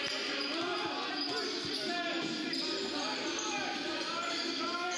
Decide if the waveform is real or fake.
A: real